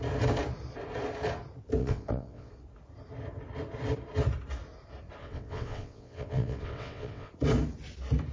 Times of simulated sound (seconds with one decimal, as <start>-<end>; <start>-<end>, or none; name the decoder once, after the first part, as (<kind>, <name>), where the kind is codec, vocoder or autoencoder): 1.8-2.5 (vocoder, WaveNeXt); 5.2-7.3